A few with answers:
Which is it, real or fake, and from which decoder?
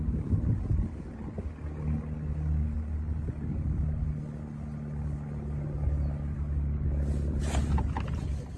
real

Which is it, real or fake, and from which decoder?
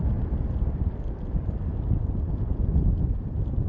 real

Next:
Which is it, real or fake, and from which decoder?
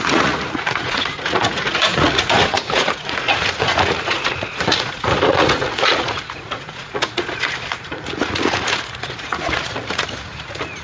fake, vocoder, Vocos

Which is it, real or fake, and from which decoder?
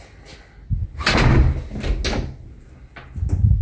real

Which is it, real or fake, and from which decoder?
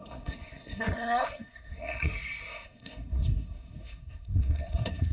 fake, codec, SNAC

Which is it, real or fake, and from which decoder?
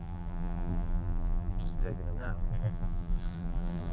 fake, vocoder, BigVGAN v2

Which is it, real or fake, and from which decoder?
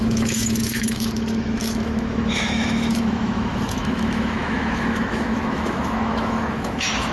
fake, autoencoder, DAC-VAE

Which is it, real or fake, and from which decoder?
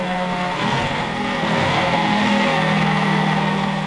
fake, codec, SNAC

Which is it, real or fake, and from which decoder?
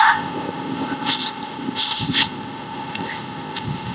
fake, codec, ZipCodec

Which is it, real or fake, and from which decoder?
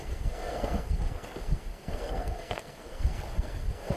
fake, codec, SNAC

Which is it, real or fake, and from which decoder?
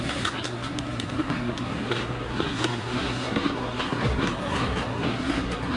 fake, codec, SNAC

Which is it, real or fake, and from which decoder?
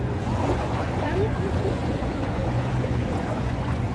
fake, vocoder, Vocos